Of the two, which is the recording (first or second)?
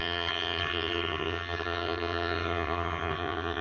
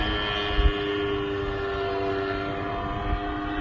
second